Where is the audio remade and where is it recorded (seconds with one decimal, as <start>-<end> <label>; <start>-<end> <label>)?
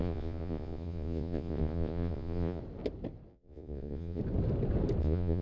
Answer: 0.0-2.6 remade; 2.6-3.3 recorded; 3.3-4.2 remade; 4.2-5.0 recorded; 5.0-5.4 remade